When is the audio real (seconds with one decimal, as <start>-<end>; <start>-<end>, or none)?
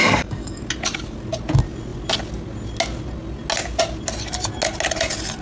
0.6-5.4